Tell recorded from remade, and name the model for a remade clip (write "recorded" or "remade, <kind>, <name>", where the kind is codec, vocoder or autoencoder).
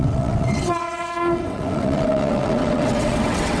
remade, vocoder, WaveNeXt